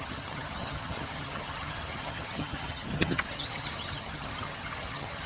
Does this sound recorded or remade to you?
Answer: remade